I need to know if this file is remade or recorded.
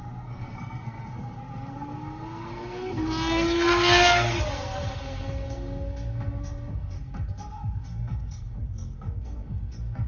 remade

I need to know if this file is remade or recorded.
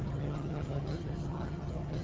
remade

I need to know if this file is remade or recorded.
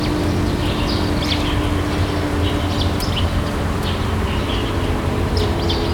recorded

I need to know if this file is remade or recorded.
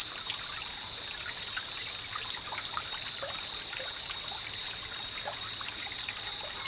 recorded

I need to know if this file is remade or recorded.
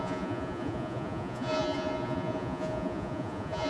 remade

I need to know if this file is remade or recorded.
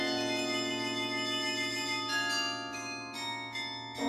recorded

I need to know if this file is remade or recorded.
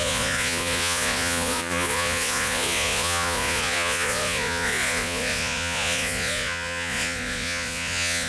remade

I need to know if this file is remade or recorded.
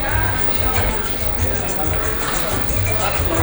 recorded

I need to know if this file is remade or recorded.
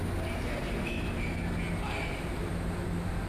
recorded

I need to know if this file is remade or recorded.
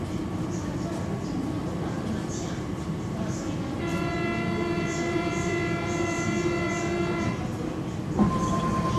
remade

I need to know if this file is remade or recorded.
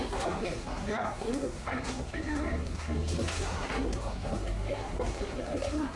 remade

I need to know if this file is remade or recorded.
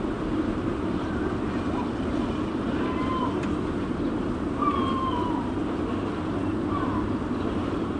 recorded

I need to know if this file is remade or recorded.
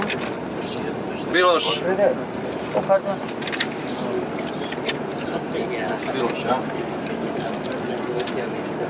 recorded